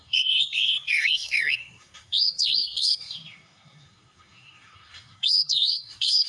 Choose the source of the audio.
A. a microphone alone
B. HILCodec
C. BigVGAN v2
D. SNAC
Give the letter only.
D